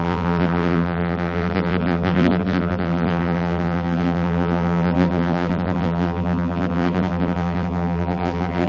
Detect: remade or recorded remade